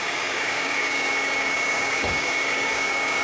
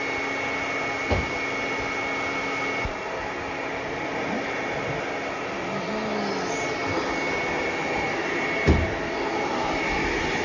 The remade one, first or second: first